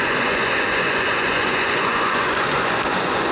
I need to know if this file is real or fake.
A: fake